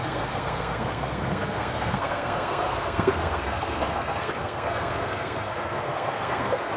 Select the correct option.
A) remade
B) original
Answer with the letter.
A